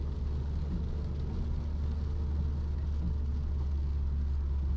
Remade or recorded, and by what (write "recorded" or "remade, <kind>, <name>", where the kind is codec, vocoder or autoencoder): recorded